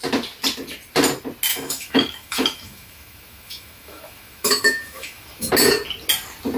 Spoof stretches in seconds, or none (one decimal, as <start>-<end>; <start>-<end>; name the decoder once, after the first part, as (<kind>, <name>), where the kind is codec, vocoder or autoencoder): 1.5-5.5 (autoencoder, DAC-VAE)